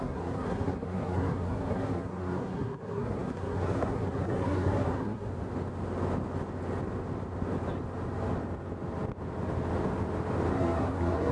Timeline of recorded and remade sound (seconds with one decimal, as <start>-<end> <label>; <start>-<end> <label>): 0.0-5.3 remade; 5.3-10.5 recorded; 10.5-11.3 remade